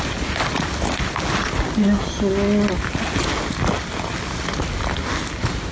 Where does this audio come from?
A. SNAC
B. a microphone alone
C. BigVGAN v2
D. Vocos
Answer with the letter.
B